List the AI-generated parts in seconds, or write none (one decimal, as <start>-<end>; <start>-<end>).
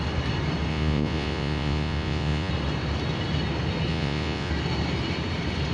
0.7-2.5; 3.9-4.5